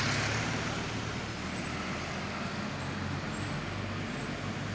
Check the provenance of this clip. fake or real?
real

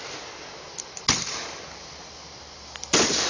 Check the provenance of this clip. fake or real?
real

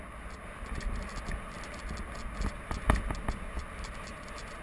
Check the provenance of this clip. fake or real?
real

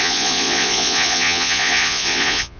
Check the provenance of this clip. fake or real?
fake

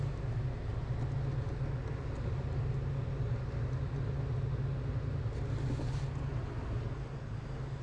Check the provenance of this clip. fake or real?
real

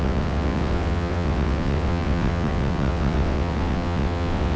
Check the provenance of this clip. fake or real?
fake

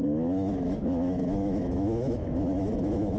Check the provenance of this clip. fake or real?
fake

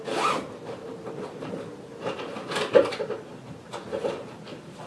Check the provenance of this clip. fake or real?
real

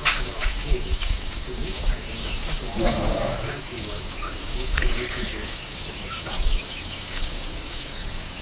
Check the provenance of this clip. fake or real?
fake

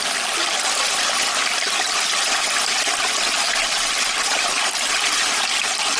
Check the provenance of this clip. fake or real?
real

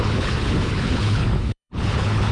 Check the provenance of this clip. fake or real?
fake